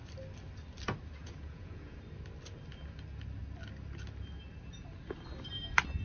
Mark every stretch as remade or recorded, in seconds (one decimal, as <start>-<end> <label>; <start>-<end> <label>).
0.0-1.2 recorded; 1.2-2.0 remade; 2.0-6.0 recorded